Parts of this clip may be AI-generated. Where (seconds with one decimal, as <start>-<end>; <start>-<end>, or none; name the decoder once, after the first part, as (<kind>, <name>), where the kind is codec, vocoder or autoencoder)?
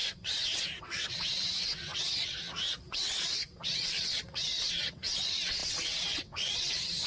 0.0-7.1 (vocoder, WaveNeXt)